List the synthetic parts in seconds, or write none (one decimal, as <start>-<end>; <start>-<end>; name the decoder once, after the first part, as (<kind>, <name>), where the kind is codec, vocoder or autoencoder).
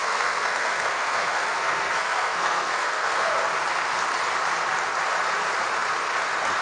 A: 0.0-3.3 (codec, SNAC)